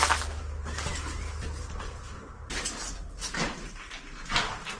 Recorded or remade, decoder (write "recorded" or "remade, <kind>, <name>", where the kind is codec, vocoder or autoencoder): recorded